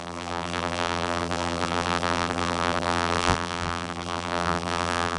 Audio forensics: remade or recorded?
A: remade